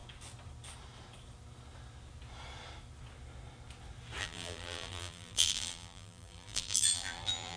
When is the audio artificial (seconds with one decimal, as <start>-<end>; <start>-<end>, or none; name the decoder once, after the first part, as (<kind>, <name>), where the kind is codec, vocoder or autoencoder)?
4.2-7.6 (vocoder, BigVGAN v2)